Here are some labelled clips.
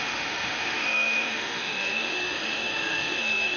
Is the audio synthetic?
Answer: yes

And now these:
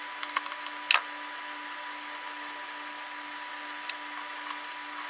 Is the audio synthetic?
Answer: no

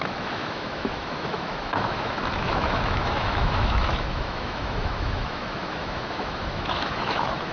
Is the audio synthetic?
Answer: yes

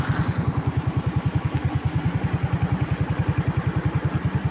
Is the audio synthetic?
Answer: no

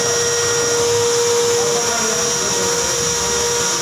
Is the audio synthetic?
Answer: no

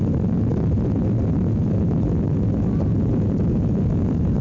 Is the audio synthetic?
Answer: no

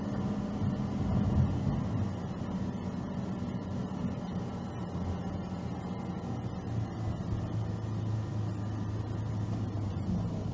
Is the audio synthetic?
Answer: no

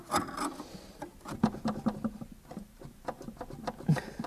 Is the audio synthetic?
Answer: no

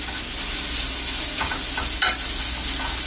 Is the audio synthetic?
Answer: no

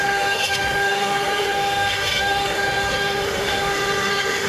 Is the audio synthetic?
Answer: yes